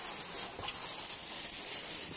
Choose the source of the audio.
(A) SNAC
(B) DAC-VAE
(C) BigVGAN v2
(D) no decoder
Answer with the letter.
D